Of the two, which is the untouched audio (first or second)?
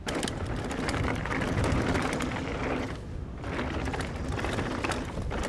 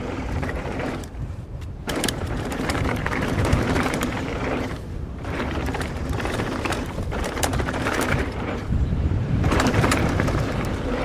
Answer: first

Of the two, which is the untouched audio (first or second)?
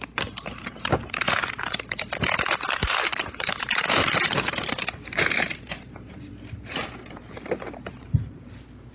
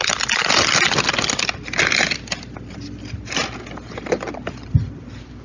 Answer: second